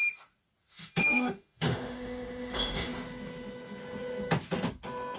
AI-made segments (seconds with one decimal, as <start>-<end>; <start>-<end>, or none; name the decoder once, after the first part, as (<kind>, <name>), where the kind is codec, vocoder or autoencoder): 0.7-2.9 (autoencoder, DAC-VAE)